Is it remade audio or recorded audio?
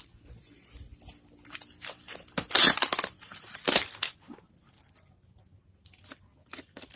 recorded